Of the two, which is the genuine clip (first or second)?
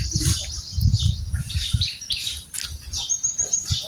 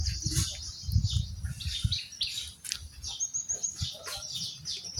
second